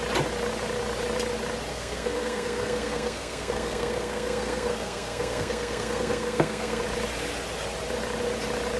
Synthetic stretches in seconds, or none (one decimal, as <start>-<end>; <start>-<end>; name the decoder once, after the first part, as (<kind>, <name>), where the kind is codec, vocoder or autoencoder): 1.7-6.8 (codec, SNAC)